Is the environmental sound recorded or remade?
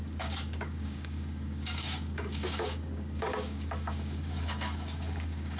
remade